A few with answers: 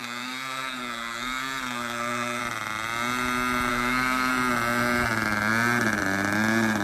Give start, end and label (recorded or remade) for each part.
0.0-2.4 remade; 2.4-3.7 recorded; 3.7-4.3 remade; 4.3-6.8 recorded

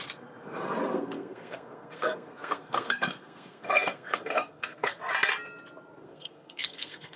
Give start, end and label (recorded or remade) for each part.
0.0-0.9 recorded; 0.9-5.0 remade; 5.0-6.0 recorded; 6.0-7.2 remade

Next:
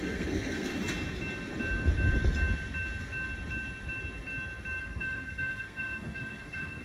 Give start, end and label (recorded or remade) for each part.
0.0-0.7 remade; 0.7-4.8 recorded; 4.8-6.8 remade